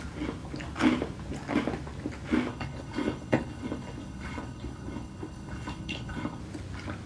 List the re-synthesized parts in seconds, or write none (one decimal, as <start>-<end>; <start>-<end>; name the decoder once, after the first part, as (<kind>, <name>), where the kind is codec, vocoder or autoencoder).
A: 2.5-6.4 (codec, HILCodec)